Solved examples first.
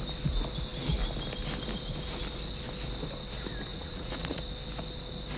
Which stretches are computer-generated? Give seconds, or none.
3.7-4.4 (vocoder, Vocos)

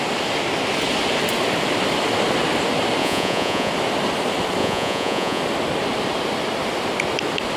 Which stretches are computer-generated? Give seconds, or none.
3.0-3.7 (vocoder, Vocos); 4.6-5.4

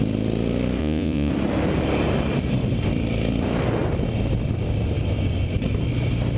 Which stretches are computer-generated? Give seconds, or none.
0.8-1.3 (vocoder, Vocos)

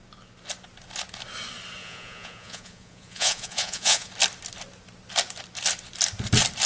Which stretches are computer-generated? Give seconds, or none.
1.8-4.1 (vocoder, Vocos)